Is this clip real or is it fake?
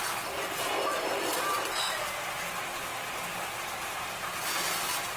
real